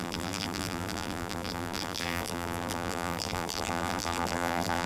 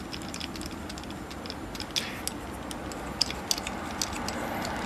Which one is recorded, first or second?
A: second